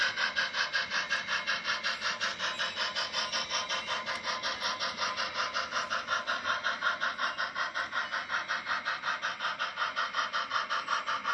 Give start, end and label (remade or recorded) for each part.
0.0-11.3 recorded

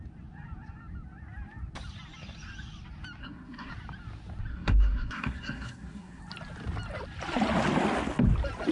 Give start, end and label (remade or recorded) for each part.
0.0-3.2 recorded; 3.2-3.7 remade; 3.7-4.5 recorded; 4.5-6.2 remade; 6.2-8.7 recorded

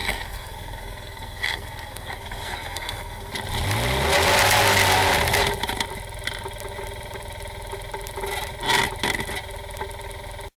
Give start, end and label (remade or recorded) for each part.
0.0-3.3 remade; 3.3-10.6 recorded

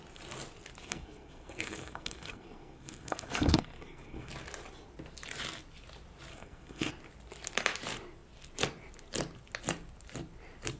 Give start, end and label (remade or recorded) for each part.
0.0-0.8 recorded; 0.8-4.3 remade; 4.3-6.3 recorded; 6.3-6.9 remade; 6.9-10.8 recorded

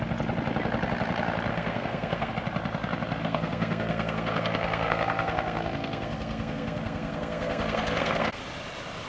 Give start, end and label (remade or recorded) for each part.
0.0-1.5 recorded; 1.5-2.3 remade; 2.3-3.2 recorded; 3.2-8.4 remade; 8.4-9.1 recorded

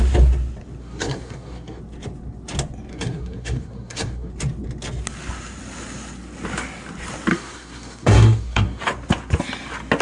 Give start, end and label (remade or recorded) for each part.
0.0-0.8 recorded; 0.8-1.8 remade; 1.8-2.9 recorded; 2.9-4.3 remade; 4.3-7.3 recorded; 7.3-8.8 remade; 8.8-10.0 recorded

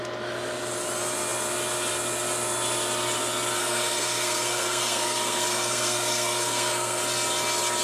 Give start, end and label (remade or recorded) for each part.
0.0-3.6 recorded; 3.6-7.0 remade; 7.0-7.8 recorded

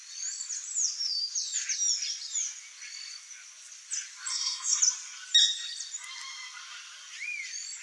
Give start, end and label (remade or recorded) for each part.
0.0-4.3 recorded; 4.3-4.8 remade; 4.8-7.8 recorded